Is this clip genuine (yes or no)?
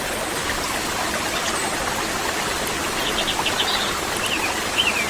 yes